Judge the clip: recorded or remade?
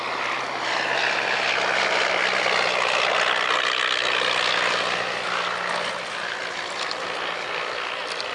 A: recorded